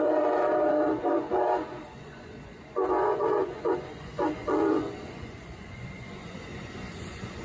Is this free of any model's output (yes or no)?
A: no